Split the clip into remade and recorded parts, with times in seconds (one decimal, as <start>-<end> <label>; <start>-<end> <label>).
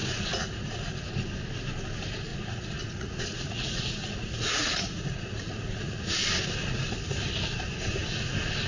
0.0-1.1 remade; 1.1-2.3 recorded; 2.3-6.1 remade; 6.1-8.7 recorded